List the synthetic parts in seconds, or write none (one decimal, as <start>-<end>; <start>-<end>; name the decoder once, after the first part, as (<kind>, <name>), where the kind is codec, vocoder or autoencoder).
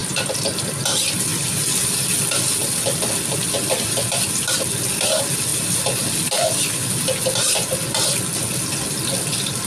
0.0-0.8 (vocoder, BigVGAN v2)